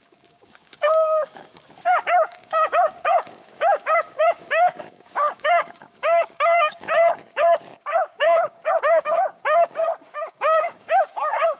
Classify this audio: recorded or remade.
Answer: remade